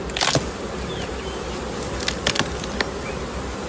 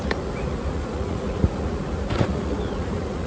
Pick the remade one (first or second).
second